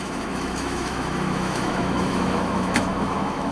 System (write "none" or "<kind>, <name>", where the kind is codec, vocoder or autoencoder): autoencoder, DAC-VAE